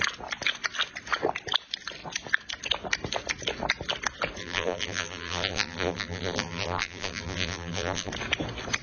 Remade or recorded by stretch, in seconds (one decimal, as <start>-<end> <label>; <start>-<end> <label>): 0.0-4.4 recorded; 4.4-8.1 remade; 8.1-8.8 recorded